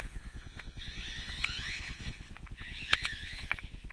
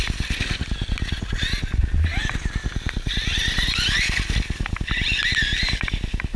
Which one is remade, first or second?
first